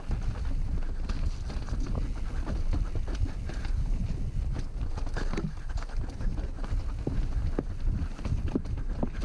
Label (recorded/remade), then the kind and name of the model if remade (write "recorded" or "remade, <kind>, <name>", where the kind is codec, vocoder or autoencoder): recorded